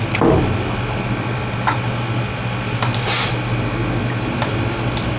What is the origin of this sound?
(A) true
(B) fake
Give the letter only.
A